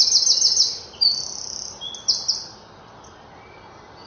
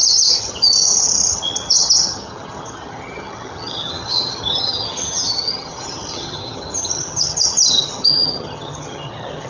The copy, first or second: second